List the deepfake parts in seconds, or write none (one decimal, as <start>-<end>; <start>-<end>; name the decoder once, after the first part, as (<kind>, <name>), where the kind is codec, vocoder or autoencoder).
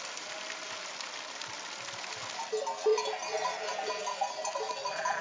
none